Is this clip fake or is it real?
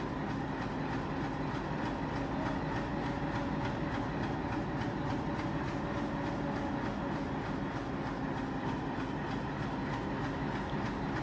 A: real